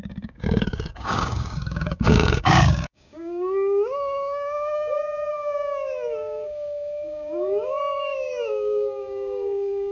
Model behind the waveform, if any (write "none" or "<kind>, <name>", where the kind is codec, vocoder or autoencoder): codec, DAC